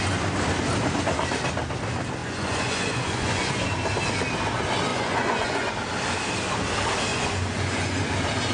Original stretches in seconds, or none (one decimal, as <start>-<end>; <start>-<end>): 0.0-2.2; 3.5-4.9; 5.7-7.1; 8.0-8.5